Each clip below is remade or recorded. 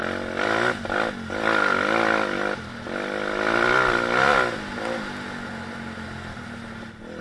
recorded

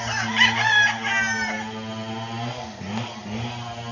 recorded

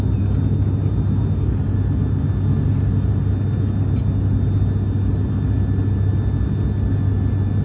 recorded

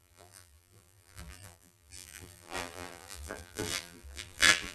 remade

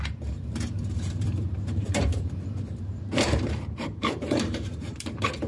remade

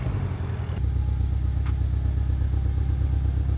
recorded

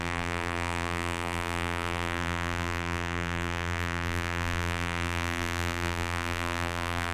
remade